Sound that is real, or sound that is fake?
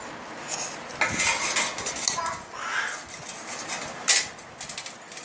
real